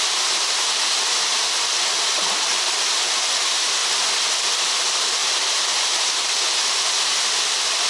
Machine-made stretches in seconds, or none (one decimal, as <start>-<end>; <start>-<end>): none